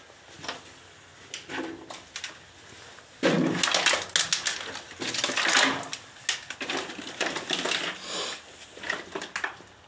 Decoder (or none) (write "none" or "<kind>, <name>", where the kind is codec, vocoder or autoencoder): none